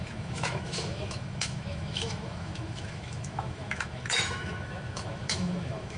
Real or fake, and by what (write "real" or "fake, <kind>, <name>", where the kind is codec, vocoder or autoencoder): fake, autoencoder, DAC-VAE